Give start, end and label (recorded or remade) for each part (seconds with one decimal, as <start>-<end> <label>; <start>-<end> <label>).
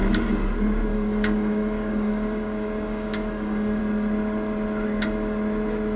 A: 0.0-0.9 recorded; 0.9-3.8 remade; 3.8-6.0 recorded